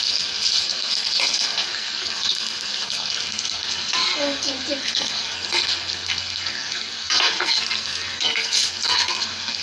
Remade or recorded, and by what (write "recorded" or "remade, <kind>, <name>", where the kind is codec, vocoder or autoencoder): remade, codec, SNAC